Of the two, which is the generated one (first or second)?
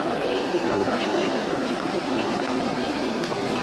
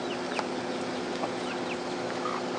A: first